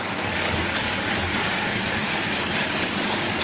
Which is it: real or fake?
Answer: fake